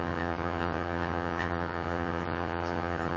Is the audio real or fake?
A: fake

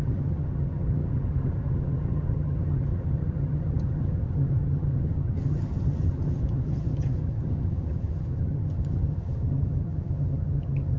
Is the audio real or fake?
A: fake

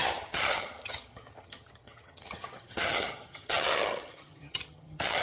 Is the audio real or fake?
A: fake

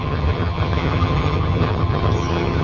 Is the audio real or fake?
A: fake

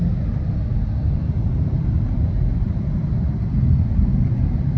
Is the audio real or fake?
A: real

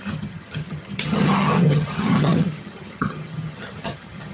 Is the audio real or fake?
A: fake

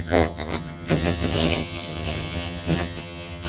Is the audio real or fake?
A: fake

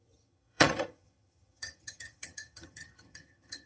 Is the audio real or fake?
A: fake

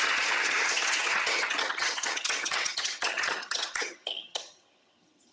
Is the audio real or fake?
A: fake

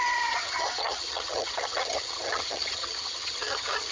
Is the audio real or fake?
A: fake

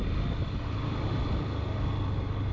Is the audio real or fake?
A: real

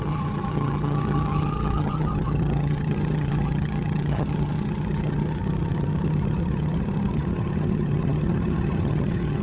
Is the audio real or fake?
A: fake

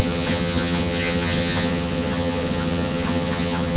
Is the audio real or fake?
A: fake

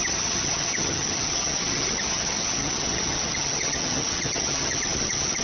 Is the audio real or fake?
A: fake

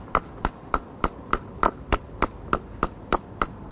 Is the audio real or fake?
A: real